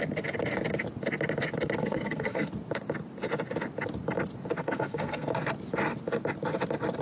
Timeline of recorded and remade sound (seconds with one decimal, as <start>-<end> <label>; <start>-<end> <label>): 0.0-1.8 recorded; 1.8-2.5 remade; 2.5-4.6 recorded; 4.6-5.3 remade; 5.3-7.0 recorded